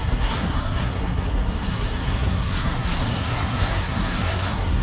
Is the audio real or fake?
fake